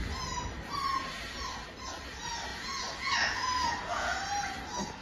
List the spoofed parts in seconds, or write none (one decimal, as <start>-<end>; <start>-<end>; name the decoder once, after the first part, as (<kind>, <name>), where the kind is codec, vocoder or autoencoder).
2.5-4.3 (vocoder, Vocos)